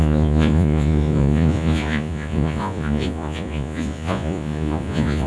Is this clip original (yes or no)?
no